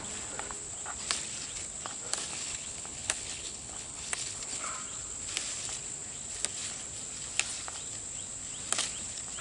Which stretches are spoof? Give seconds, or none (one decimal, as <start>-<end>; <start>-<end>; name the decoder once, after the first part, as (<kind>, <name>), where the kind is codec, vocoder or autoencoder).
2.3-4.7 (codec, HILCodec)